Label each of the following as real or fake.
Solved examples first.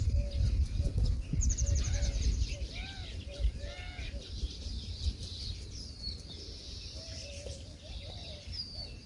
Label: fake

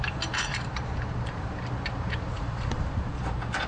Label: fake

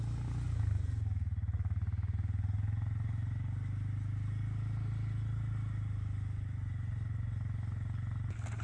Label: real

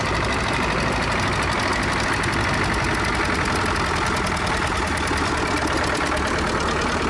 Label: real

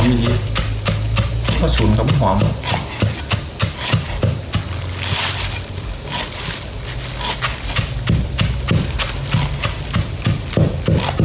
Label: real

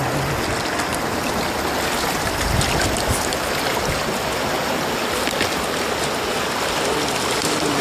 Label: real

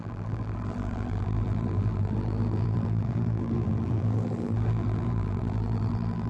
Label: fake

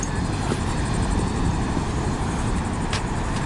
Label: fake